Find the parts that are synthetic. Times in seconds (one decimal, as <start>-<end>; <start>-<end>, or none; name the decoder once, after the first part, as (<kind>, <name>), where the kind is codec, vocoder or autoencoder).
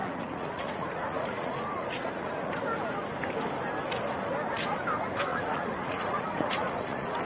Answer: 0.0-2.6 (vocoder, Vocos); 5.3-7.2